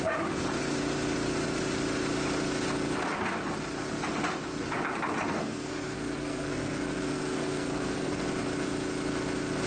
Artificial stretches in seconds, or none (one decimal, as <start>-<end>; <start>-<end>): 5.3-8.2